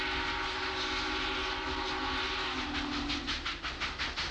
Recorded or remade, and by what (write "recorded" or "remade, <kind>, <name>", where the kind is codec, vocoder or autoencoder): recorded